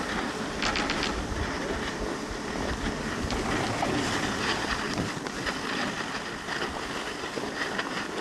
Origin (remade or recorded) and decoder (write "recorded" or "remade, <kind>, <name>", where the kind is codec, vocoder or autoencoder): recorded